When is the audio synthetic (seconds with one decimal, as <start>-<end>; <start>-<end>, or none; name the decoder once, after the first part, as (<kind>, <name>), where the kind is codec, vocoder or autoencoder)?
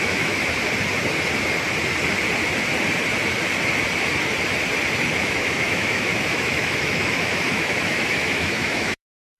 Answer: 0.0-0.4 (autoencoder, DAC-VAE); 5.1-9.4